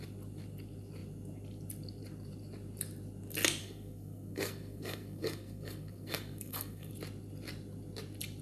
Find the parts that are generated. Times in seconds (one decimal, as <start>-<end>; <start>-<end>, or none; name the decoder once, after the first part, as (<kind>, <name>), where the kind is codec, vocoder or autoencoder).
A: 3.6-6.9 (codec, SNAC)